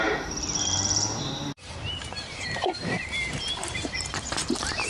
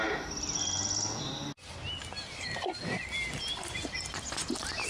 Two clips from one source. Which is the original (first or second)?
second